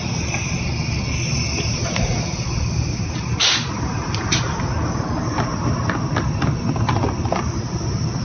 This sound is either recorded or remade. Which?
recorded